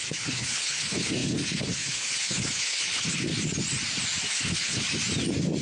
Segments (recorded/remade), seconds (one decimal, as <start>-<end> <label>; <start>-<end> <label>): 0.0-3.3 remade; 3.3-4.3 recorded; 4.3-4.8 remade; 4.8-5.6 recorded